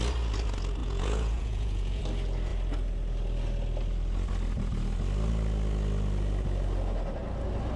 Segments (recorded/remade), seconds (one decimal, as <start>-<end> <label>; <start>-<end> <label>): 0.0-0.8 recorded; 0.8-2.0 remade; 2.0-7.8 recorded